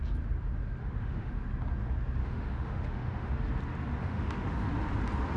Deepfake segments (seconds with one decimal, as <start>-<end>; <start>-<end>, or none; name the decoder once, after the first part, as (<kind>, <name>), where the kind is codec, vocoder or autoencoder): 0.8-1.3 (autoencoder, DAC-VAE); 2.2-3.3; 4.0-4.7